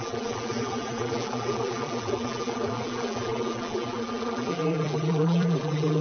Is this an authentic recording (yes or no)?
no